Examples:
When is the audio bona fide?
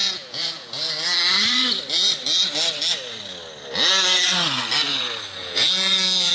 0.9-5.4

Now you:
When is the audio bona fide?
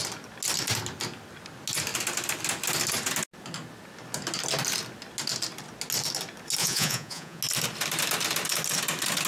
0.0-6.6; 7.4-9.3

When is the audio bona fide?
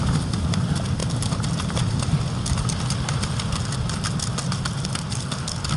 0.0-5.8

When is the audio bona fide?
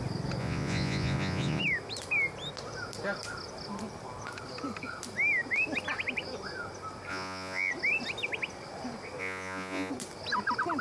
0.0-0.4; 1.6-7.1; 7.7-9.2; 9.9-10.8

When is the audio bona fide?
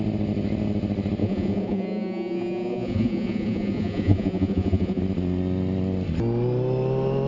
0.0-1.2; 5.0-7.3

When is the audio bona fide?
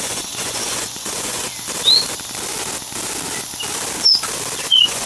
1.5-4.6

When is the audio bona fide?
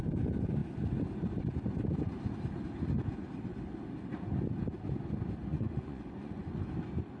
0.0-5.5; 6.6-7.2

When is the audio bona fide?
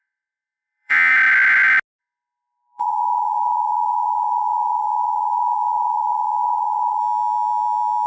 1.1-2.0; 7.0-8.1